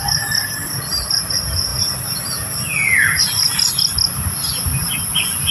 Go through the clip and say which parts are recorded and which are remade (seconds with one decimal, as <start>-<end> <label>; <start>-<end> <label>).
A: 0.0-5.5 recorded